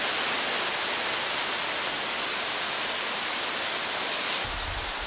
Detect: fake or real real